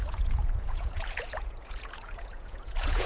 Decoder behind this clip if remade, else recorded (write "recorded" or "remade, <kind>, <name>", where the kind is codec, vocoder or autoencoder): remade, vocoder, Vocos